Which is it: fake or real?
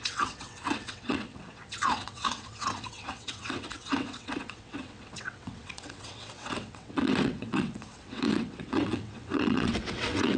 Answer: fake